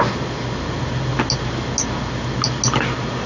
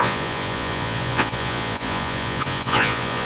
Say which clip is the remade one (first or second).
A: second